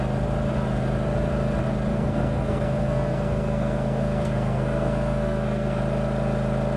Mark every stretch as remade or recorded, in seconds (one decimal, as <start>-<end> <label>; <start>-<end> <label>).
0.0-1.9 recorded; 1.9-5.8 remade; 5.8-6.8 recorded